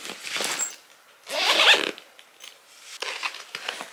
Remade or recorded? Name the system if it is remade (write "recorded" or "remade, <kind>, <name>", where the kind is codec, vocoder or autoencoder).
recorded